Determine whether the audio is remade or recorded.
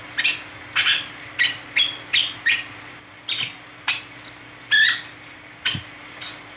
recorded